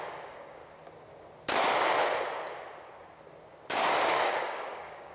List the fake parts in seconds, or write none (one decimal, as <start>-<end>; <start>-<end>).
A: 0.0-0.6; 3.7-5.1